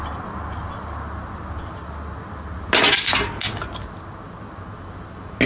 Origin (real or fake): real